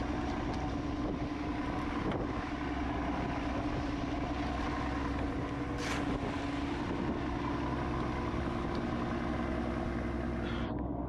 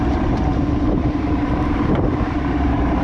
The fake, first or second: second